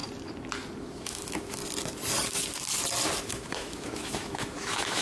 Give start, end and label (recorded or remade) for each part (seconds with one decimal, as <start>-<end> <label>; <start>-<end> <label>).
0.0-0.8 recorded; 0.8-1.6 remade; 1.6-3.2 recorded; 3.2-5.0 remade